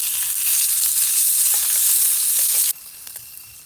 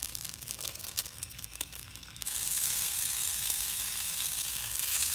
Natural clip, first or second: first